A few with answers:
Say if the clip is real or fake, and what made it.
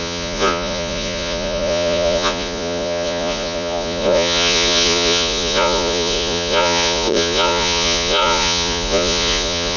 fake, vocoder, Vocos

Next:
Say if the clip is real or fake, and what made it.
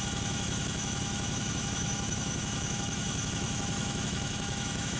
fake, autoencoder, DAC-VAE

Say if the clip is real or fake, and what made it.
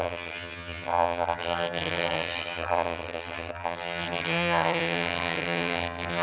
fake, vocoder, HiFi-GAN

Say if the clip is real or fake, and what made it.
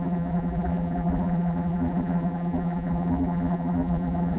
fake, vocoder, BigVGAN v2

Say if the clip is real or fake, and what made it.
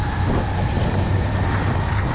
real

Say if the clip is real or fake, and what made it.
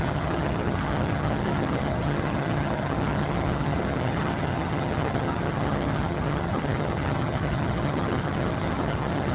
fake, vocoder, HiFi-GAN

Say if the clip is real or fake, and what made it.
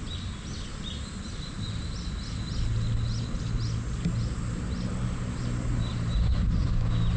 real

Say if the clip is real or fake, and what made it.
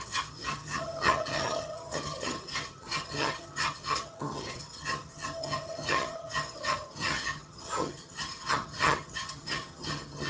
fake, vocoder, HiFi-GAN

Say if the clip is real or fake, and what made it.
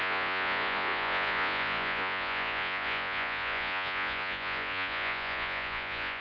fake, vocoder, Vocos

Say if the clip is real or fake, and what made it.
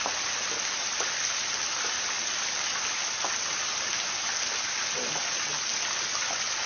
real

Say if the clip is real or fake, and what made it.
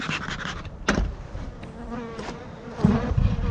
real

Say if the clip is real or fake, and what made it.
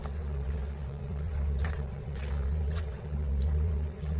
fake, vocoder, WaveNeXt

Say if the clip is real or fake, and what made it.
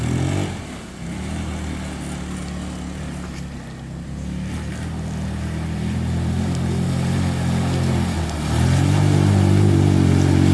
real